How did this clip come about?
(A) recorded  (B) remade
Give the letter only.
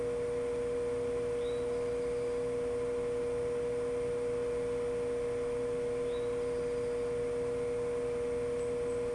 A